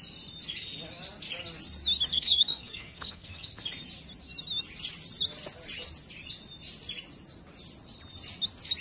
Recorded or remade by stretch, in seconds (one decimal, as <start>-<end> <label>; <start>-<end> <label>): 0.0-2.1 recorded; 2.1-3.5 remade; 3.5-8.8 recorded